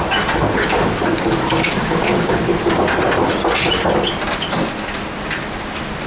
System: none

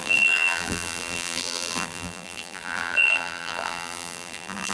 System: vocoder, BigVGAN v2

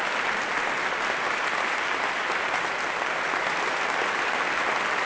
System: none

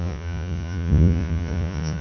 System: vocoder, Vocos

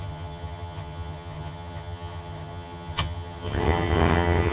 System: vocoder, HiFi-GAN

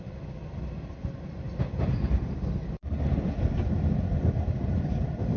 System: none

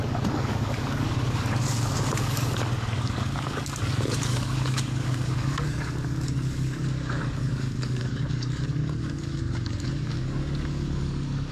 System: codec, DAC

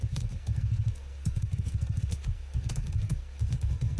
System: codec, SNAC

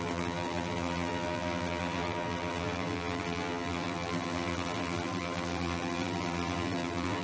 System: vocoder, BigVGAN v2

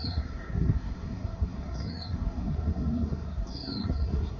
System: codec, SNAC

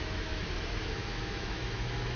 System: autoencoder, DAC-VAE